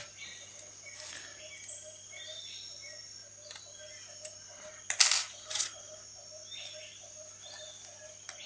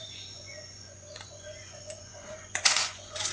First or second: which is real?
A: first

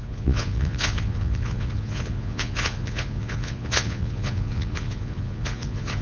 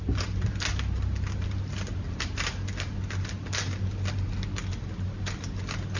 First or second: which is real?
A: second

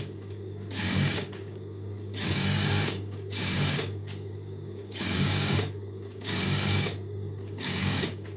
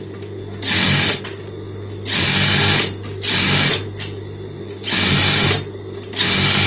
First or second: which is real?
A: second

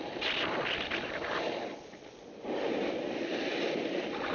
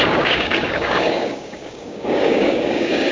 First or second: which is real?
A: first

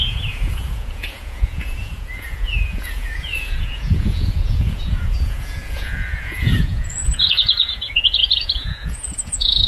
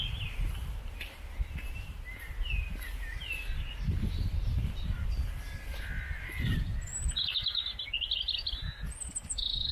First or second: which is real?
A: second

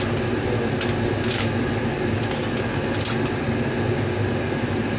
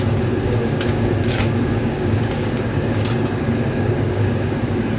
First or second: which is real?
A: first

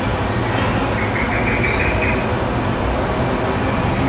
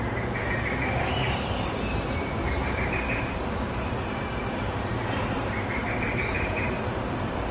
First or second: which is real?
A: first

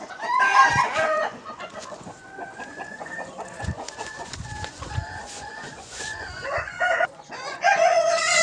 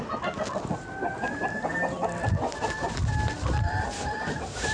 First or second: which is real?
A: second